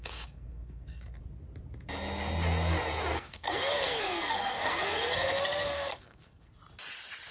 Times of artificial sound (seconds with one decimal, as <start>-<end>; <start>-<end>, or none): 0.0-1.2; 3.1-6.5